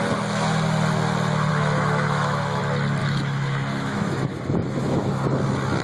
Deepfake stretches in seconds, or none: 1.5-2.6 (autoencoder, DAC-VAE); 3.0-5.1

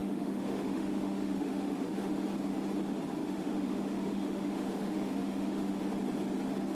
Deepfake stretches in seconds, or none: 0.0-2.1 (autoencoder, DAC-VAE); 3.2-5.8

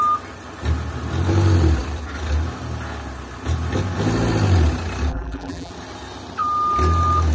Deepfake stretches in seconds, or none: 5.1-5.7 (vocoder, BigVGAN v2)

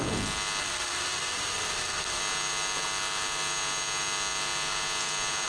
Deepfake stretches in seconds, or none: 0.6-2.2 (codec, SNAC)

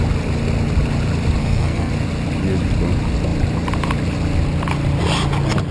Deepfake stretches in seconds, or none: 1.4-1.9 (codec, SNAC)